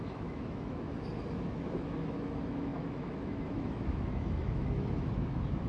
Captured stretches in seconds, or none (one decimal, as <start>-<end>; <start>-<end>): none